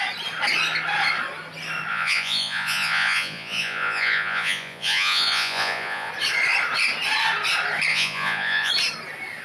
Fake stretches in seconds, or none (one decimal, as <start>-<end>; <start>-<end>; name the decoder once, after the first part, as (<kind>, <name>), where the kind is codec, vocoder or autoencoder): 1.9-6.1 (vocoder, Vocos); 7.9-8.7